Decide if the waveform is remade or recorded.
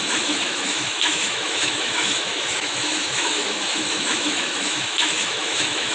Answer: remade